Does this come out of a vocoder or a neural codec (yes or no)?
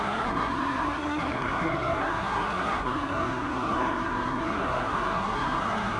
yes